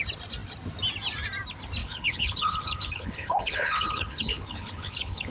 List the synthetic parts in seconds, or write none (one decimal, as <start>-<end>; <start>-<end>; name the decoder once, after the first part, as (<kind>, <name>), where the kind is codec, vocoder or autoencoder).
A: 1.8-5.3 (codec, HILCodec)